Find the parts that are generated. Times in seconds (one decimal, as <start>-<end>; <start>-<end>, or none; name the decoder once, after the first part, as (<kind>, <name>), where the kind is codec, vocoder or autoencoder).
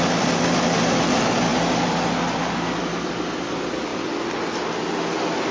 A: none